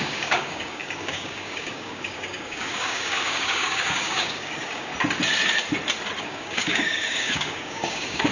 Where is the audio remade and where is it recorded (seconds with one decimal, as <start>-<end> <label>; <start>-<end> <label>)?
0.0-4.9 remade; 4.9-6.2 recorded; 6.2-8.3 remade